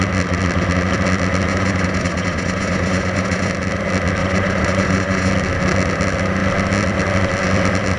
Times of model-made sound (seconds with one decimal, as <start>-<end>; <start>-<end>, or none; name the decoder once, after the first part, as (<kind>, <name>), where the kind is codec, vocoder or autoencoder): 1.5-3.5 (vocoder, Vocos); 4.2-5.3